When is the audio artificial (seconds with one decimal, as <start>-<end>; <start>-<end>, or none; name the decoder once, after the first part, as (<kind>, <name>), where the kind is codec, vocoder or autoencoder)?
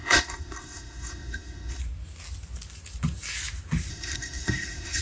0.0-1.8 (codec, SNAC); 3.9-5.0